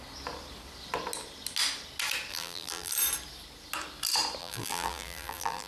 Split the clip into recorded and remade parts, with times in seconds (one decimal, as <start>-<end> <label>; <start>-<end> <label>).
0.0-2.3 recorded; 2.3-2.9 remade; 2.9-4.4 recorded; 4.4-5.7 remade

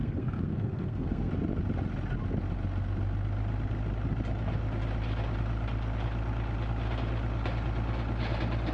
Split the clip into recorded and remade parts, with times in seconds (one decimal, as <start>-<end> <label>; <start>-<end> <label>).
0.0-1.3 remade; 1.3-8.7 recorded

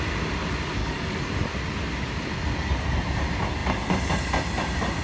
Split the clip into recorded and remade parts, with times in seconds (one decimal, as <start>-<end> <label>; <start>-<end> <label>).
0.0-0.8 recorded; 0.8-1.3 remade; 1.3-5.0 recorded